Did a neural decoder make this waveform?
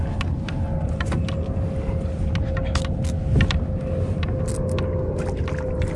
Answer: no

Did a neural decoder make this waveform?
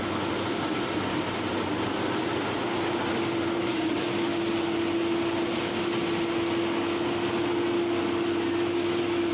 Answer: no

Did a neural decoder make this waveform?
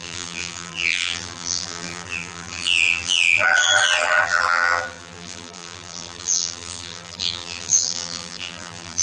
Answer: yes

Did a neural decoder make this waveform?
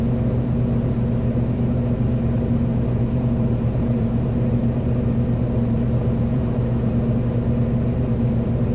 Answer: yes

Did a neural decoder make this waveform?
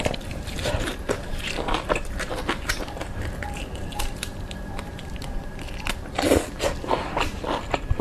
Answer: yes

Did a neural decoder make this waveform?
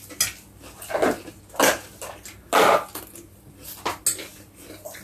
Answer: no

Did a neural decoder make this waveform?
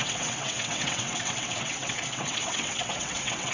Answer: yes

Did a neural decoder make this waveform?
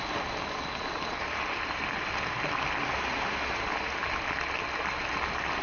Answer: no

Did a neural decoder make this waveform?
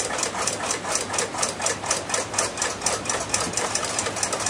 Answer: yes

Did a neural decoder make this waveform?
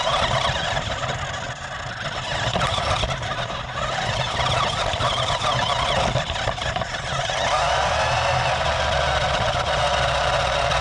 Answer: no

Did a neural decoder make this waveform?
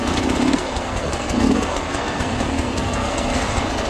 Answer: yes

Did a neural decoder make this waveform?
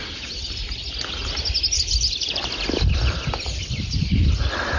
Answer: no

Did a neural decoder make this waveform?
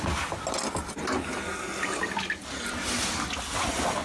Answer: no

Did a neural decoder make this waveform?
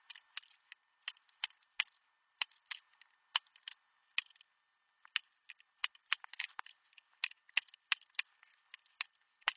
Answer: no